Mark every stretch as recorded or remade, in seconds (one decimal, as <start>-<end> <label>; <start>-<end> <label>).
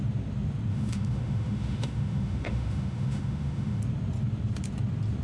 0.0-0.7 recorded; 0.7-3.8 remade; 3.8-5.2 recorded